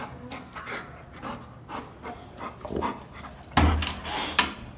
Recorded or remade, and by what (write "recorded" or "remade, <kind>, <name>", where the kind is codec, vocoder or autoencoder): recorded